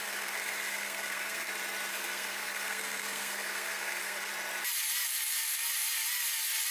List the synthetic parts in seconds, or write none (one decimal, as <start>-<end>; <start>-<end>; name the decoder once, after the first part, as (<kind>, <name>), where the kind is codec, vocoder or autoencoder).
0.0-1.5 (codec, SNAC); 1.9-4.3